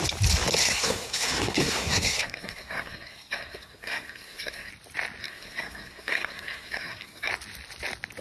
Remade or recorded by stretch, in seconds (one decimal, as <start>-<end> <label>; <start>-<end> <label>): 0.0-0.6 recorded; 0.6-4.7 remade; 4.7-5.2 recorded; 5.2-7.3 remade; 7.3-8.2 recorded